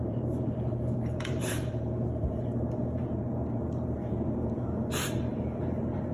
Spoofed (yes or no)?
yes